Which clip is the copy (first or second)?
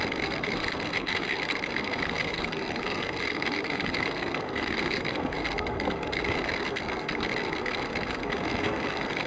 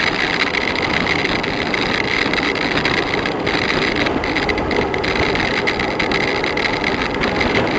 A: first